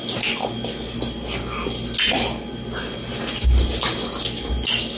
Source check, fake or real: real